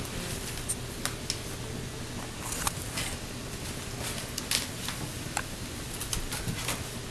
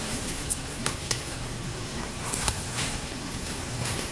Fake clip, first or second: second